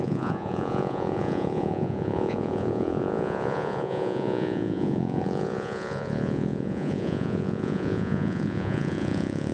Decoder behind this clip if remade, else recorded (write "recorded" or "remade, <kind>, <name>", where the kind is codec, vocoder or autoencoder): remade, vocoder, Vocos